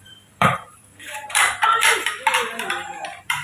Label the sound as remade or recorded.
remade